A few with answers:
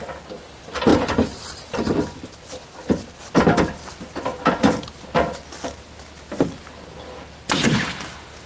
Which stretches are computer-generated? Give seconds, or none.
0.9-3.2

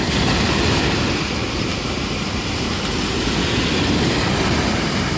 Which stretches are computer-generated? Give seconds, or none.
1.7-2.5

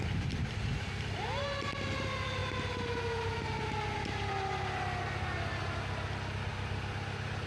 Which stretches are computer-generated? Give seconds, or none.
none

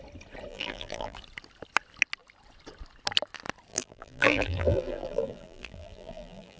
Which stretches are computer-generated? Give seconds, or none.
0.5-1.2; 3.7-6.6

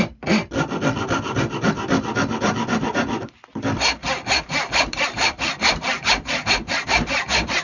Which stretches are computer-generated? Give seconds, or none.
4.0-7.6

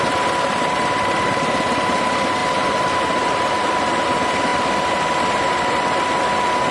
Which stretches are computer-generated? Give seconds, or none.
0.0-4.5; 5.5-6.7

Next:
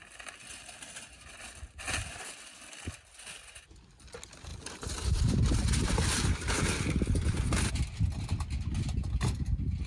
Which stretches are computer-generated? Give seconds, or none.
4.5-7.6